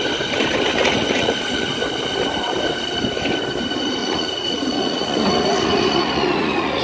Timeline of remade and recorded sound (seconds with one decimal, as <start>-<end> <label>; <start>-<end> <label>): 0.0-0.7 recorded; 0.7-1.7 remade; 1.7-4.0 recorded; 4.0-6.8 remade